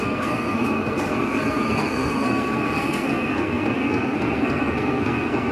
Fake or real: fake